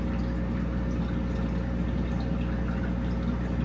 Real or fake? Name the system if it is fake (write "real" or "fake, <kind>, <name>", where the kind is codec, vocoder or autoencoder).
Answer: real